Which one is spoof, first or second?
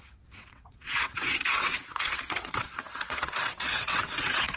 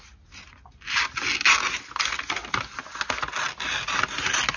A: first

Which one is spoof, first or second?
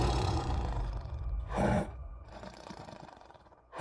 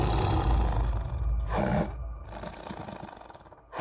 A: first